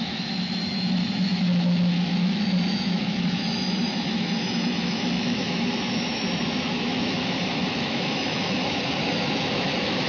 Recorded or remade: remade